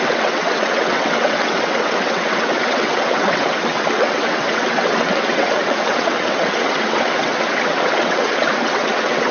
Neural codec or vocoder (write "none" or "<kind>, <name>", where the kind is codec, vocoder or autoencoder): vocoder, WaveNeXt